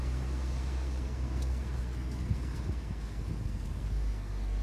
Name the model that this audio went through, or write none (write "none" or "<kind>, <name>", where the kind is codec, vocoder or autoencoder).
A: codec, SNAC